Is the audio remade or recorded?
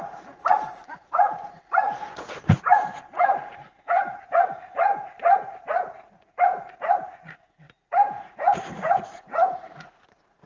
remade